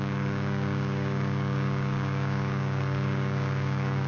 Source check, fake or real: fake